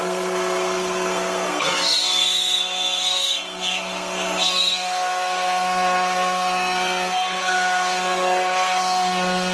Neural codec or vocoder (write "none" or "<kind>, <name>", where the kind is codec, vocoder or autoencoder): codec, SNAC